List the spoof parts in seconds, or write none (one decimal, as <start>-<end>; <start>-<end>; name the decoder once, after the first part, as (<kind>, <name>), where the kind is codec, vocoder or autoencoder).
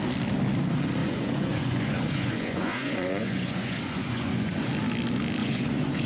1.0-4.7 (vocoder, Vocos); 5.4-6.1